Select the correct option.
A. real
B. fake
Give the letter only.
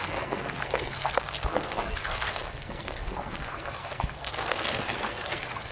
B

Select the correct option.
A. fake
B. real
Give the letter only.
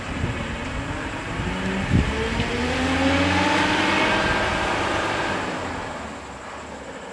B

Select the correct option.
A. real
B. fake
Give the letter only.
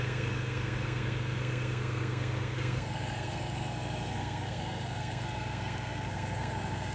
B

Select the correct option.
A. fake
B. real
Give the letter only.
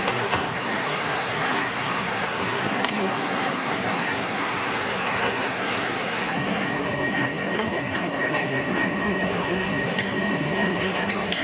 A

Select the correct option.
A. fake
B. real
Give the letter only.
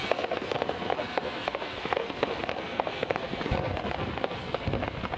A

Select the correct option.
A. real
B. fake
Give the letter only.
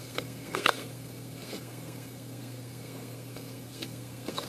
B